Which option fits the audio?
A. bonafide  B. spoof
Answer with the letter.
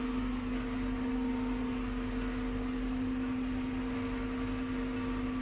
A